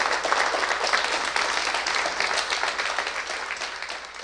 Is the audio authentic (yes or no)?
yes